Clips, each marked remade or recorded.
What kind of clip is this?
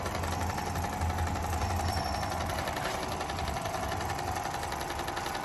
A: recorded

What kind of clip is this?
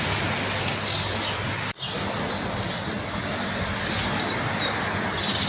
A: recorded